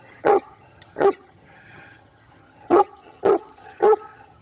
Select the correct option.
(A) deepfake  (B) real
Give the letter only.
A